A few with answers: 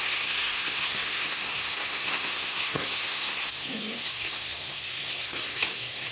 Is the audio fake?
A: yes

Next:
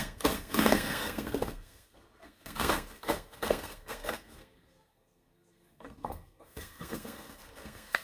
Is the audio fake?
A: yes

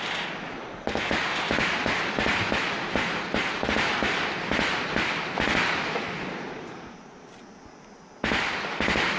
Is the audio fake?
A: no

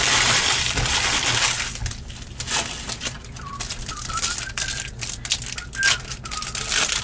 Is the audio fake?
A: no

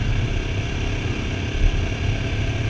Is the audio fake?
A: no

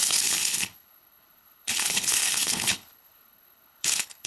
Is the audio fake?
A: yes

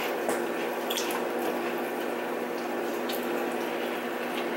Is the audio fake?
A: no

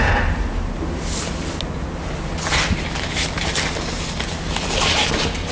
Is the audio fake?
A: no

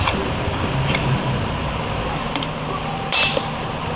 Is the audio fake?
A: yes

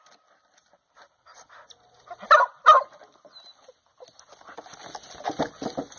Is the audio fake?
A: no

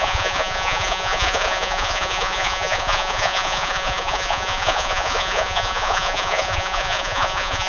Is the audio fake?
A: yes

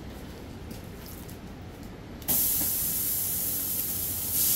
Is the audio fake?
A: no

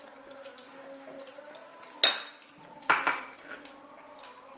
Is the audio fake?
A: no